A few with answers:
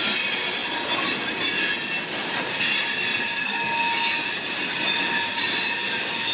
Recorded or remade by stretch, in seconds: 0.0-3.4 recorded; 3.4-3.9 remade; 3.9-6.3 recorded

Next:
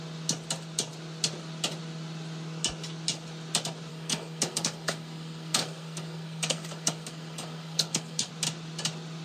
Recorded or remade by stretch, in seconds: 0.0-3.9 recorded; 3.9-8.3 remade; 8.3-9.2 recorded

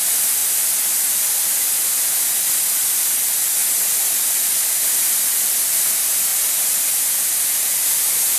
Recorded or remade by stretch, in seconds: 0.0-8.4 recorded

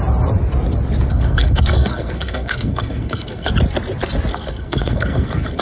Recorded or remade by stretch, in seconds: 0.0-1.1 recorded; 1.1-3.5 remade; 3.5-4.3 recorded; 4.3-5.6 remade